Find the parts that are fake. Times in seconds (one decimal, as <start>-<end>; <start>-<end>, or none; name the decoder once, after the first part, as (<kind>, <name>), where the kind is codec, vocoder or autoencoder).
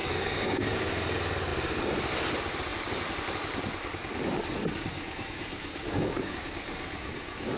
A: 0.0-0.9 (codec, DAC); 4.9-7.6